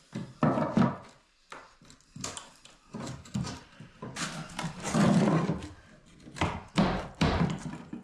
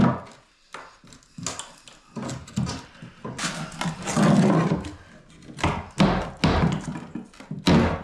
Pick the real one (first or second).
second